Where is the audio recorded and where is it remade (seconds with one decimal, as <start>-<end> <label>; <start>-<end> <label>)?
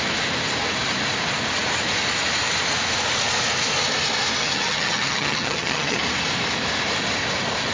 0.0-4.4 recorded; 4.4-6.0 remade; 6.0-7.7 recorded